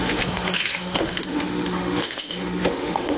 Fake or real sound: fake